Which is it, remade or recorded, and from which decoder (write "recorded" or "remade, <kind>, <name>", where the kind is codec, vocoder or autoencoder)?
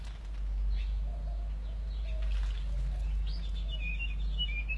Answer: recorded